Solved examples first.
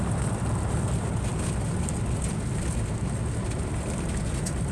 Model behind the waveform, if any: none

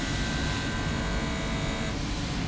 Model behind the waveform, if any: none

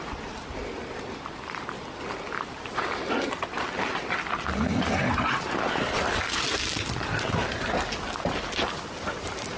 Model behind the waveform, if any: none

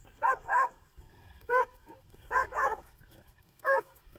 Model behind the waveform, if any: codec, SNAC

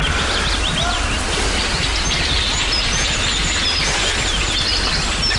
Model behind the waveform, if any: none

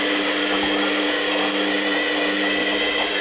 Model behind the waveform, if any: vocoder, BigVGAN v2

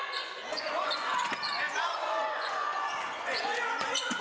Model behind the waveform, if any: vocoder, Vocos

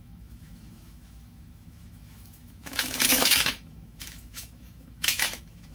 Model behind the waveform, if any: autoencoder, DAC-VAE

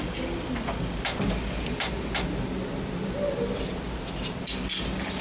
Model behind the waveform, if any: none